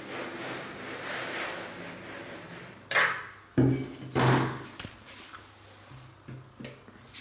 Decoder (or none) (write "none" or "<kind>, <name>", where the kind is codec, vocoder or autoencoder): none